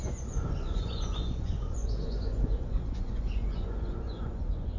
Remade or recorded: remade